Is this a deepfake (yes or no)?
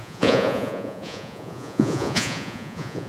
yes